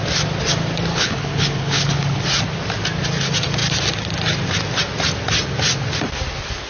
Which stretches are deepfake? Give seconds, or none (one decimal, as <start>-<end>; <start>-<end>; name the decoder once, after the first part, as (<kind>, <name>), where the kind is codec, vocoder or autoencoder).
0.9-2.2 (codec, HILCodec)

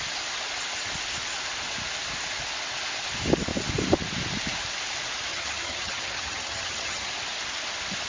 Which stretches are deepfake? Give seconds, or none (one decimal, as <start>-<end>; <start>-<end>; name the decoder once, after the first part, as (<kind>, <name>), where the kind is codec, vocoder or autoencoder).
5.3-7.1 (vocoder, HiFi-GAN)

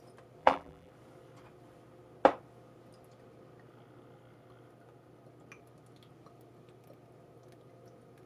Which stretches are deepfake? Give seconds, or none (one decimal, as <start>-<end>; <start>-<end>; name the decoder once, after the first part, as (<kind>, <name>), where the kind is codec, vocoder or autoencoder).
0.4-0.9 (vocoder, BigVGAN v2)

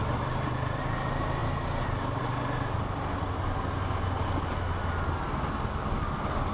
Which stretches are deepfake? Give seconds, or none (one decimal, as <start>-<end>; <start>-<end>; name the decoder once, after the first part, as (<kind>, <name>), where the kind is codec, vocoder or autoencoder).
none

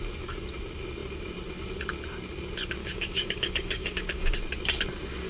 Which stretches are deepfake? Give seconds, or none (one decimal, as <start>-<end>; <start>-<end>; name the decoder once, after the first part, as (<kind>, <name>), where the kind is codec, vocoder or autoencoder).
2.8-4.3 (codec, DAC)